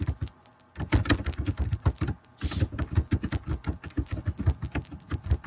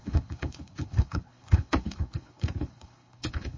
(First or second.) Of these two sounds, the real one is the first